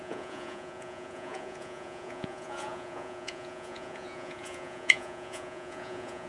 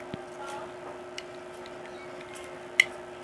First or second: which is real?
second